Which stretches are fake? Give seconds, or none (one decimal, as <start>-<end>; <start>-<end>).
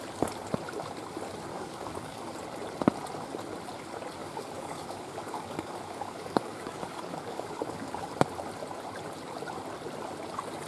1.5-2.4; 4.2-8.1